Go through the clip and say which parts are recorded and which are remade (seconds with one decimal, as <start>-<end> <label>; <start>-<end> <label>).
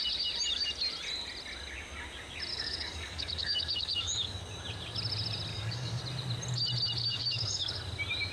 0.0-2.5 recorded; 2.5-4.4 remade; 4.4-5.5 recorded; 5.5-6.0 remade; 6.0-7.0 recorded; 7.0-7.8 remade; 7.8-8.3 recorded